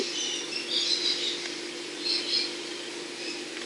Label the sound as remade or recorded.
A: recorded